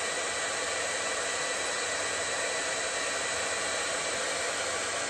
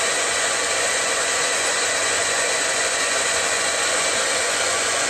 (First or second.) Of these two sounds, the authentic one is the first